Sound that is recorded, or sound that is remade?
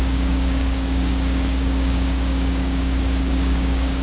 remade